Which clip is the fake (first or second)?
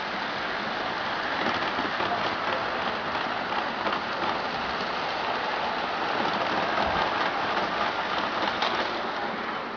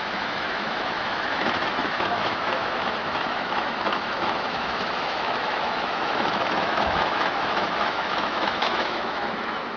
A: second